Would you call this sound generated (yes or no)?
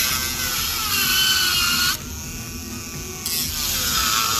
no